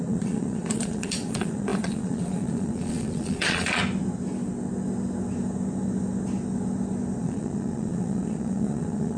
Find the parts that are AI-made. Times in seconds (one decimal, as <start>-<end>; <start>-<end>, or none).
0.0-3.8; 7.2-9.2